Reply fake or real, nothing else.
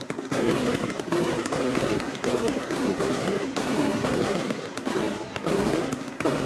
fake